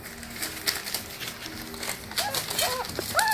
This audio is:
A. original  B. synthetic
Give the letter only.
A